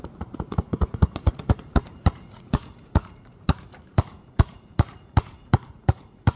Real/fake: fake